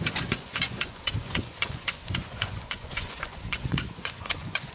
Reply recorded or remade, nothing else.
remade